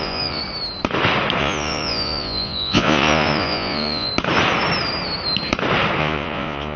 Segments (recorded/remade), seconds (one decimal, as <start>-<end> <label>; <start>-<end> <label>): 0.0-0.4 remade; 0.4-1.4 recorded; 1.4-4.1 remade; 4.1-6.0 recorded; 6.0-6.8 remade